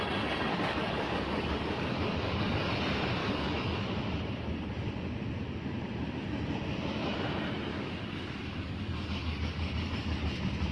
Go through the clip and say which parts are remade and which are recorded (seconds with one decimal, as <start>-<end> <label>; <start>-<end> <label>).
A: 0.0-0.5 recorded; 0.5-2.7 remade; 2.7-3.2 recorded; 3.2-3.8 remade; 3.8-7.7 recorded; 7.7-10.2 remade; 10.2-10.7 recorded